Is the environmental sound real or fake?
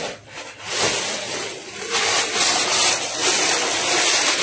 real